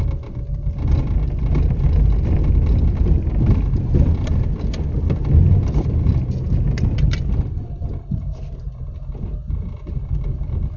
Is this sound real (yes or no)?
yes